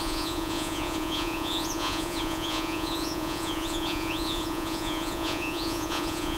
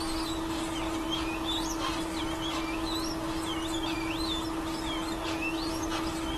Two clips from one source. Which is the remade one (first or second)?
first